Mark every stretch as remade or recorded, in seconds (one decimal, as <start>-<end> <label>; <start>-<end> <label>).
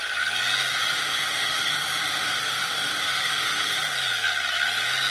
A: 0.0-0.7 recorded; 0.7-3.8 remade; 3.8-5.1 recorded